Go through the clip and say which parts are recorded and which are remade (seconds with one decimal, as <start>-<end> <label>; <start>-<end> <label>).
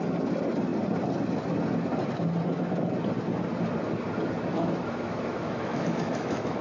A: 0.0-4.5 recorded; 4.5-6.6 remade